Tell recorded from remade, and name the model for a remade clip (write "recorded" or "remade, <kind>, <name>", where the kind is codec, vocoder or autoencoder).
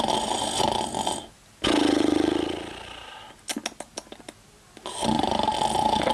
recorded